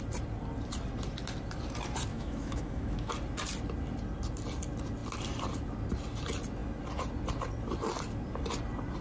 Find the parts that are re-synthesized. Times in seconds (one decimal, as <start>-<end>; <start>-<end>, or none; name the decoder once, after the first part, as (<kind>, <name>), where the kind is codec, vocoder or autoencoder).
2.1-3.1 (autoencoder, DAC-VAE)

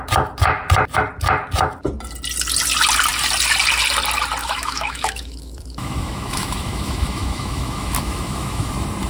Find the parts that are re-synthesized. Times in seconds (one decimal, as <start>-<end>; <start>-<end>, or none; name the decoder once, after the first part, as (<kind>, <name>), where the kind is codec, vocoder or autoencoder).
4.4-8.7 (autoencoder, DAC-VAE)

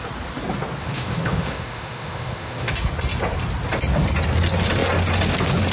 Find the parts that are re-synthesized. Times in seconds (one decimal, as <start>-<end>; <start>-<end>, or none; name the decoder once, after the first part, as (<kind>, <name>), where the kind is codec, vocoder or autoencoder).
0.8-2.7 (autoencoder, DAC-VAE)